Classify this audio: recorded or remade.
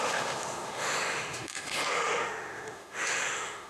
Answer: remade